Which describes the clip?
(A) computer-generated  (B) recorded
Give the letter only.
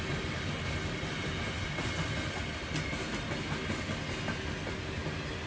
B